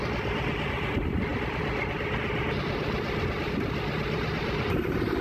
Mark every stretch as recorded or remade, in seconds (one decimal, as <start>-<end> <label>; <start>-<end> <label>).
0.0-1.3 recorded; 1.3-4.4 remade; 4.4-5.2 recorded